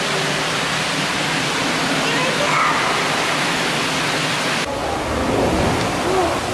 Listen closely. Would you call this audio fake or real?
real